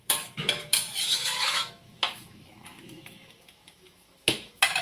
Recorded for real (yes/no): no